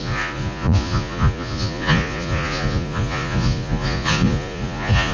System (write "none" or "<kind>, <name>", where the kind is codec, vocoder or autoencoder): vocoder, Vocos